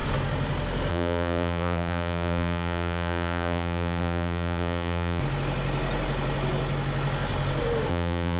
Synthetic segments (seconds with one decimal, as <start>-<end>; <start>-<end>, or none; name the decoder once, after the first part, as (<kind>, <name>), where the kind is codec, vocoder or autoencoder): 0.9-5.2 (vocoder, BigVGAN v2); 7.9-8.4